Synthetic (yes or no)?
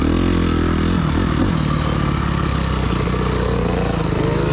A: no